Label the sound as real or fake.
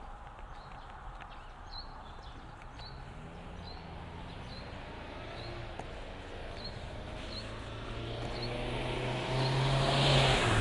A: real